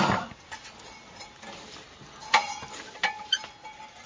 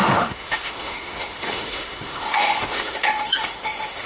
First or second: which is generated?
second